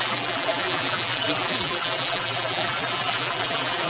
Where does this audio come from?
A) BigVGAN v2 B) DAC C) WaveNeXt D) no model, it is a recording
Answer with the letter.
A